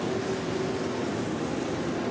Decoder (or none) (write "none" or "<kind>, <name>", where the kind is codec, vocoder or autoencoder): none